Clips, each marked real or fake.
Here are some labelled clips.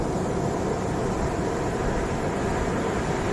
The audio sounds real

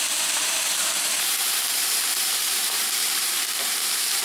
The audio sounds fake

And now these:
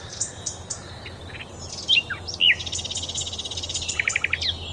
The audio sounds real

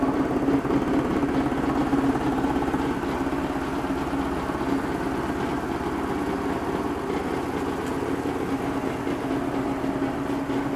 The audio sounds real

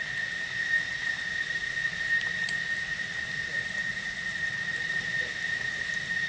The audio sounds real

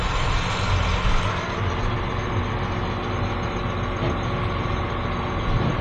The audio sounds real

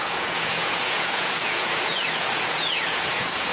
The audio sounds fake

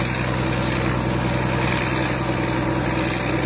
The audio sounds real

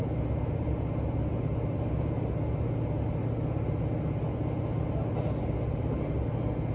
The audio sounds real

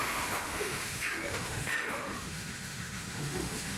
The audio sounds fake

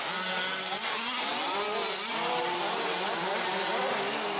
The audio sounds real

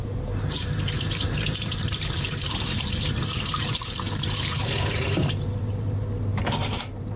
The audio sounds fake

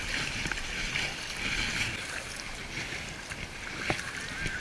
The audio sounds real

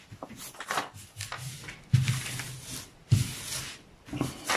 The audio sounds real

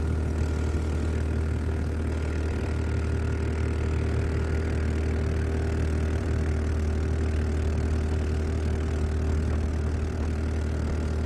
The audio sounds fake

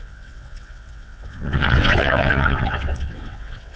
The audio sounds fake